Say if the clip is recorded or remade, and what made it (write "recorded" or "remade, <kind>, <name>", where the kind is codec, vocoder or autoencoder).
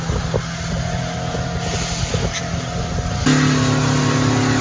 recorded